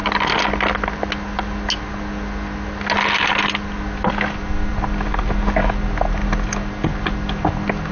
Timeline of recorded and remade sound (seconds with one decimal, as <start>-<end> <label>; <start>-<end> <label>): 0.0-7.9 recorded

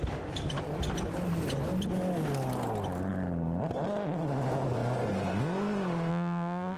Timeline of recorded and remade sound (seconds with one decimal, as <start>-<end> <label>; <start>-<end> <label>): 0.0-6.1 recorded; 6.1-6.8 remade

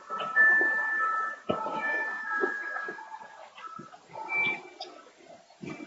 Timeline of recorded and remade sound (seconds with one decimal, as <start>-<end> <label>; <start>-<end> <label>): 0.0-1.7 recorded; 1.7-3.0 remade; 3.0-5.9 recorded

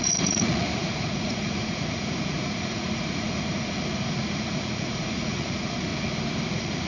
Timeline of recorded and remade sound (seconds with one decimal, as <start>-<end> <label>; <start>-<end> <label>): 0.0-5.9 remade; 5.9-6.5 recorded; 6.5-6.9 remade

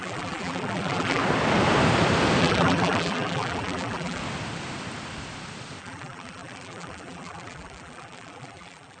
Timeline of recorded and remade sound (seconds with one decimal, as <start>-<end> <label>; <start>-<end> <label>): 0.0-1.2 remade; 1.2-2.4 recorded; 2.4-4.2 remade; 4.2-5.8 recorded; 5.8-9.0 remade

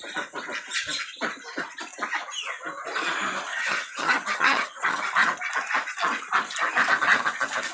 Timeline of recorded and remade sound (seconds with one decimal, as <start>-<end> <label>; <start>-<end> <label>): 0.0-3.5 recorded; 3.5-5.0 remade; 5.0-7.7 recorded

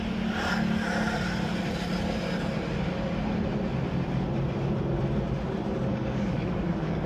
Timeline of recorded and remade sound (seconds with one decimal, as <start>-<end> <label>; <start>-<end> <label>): 0.0-5.9 recorded; 5.9-7.1 remade

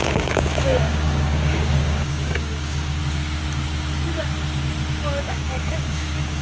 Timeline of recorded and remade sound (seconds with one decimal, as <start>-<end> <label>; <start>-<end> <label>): 0.0-3.0 remade; 3.0-5.2 recorded; 5.2-6.4 remade